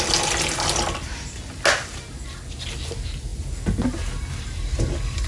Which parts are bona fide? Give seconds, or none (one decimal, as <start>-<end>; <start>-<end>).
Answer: 0.0-5.3

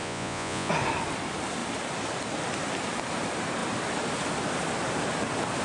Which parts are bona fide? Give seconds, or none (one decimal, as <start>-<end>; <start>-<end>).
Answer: 0.7-5.6

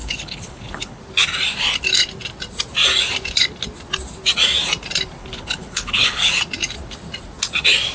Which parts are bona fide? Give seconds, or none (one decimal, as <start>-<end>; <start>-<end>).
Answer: 1.0-5.2; 6.3-7.9

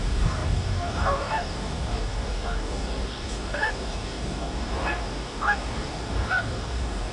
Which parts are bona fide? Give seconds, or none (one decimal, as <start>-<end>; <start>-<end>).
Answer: none

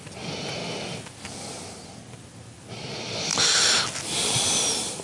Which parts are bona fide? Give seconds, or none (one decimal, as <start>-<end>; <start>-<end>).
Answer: 0.6-2.7